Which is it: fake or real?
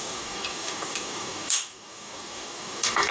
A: fake